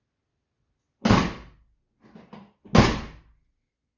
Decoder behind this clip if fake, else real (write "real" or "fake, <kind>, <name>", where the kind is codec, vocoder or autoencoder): real